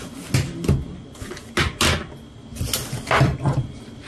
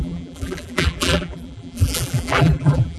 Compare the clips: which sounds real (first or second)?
first